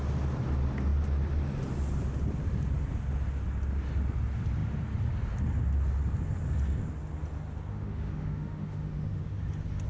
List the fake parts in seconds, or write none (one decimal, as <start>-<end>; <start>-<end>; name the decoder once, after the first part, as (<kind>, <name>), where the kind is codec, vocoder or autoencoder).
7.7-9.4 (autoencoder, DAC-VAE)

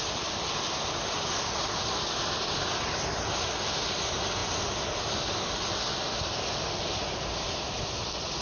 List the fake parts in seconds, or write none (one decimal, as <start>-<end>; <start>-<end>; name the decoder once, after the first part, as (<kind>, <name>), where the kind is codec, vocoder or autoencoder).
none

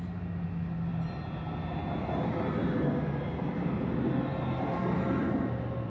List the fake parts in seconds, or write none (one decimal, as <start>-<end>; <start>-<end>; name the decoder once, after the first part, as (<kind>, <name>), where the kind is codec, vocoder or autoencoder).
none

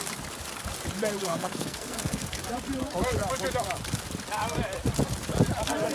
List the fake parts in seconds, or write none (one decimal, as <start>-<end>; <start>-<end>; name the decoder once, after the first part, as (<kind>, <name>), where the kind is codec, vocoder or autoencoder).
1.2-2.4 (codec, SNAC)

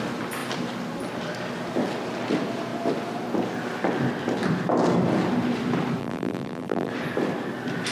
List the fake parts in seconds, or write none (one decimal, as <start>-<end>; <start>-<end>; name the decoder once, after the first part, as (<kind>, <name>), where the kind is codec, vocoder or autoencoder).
6.0-6.9 (vocoder, BigVGAN v2)